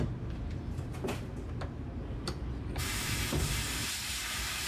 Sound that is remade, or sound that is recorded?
remade